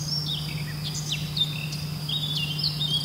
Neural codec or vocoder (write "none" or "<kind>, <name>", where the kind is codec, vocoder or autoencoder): none